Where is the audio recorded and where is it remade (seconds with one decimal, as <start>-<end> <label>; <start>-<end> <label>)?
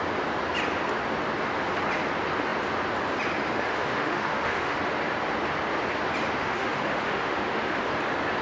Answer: 0.0-3.7 recorded; 3.7-4.8 remade; 4.8-6.4 recorded; 6.4-7.9 remade; 7.9-8.4 recorded